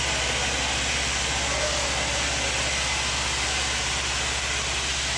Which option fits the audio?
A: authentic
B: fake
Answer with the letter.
A